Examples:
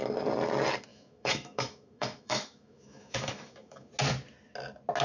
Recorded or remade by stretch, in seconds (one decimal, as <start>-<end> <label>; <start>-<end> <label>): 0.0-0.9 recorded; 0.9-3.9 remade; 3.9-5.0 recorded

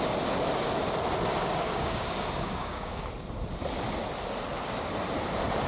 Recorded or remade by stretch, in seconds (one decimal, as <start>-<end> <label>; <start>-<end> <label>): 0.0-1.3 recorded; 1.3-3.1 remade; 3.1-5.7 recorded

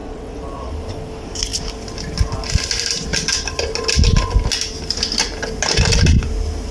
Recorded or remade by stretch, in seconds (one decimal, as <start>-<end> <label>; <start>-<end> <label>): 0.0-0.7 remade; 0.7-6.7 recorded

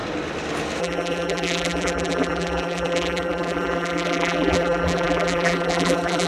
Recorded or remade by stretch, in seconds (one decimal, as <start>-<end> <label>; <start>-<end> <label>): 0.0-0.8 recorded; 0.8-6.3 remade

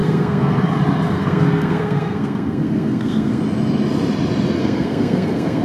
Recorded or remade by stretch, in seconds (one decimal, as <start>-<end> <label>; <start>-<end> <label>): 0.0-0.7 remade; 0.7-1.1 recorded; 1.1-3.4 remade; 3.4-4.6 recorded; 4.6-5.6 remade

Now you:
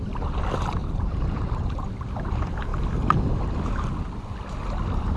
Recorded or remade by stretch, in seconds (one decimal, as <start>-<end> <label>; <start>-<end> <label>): 0.0-0.8 recorded; 0.8-1.8 remade; 1.8-5.2 recorded

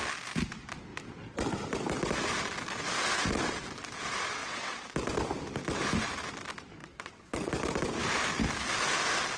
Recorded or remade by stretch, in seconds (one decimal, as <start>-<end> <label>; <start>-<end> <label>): 0.0-4.4 recorded; 4.4-4.9 remade; 4.9-6.8 recorded; 6.8-7.5 remade; 7.5-9.4 recorded